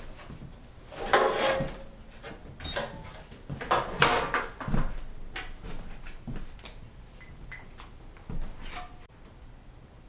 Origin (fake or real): real